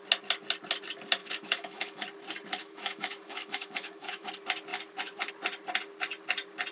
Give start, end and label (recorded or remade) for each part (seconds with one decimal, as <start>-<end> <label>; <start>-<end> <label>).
0.0-1.2 recorded; 1.2-2.0 remade; 2.0-2.6 recorded; 2.6-4.3 remade; 4.3-6.7 recorded